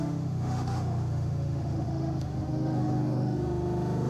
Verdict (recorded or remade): remade